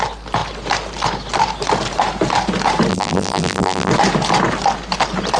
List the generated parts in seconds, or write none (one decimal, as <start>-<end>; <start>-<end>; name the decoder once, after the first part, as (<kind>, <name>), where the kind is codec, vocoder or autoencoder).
2.9-3.9 (vocoder, BigVGAN v2)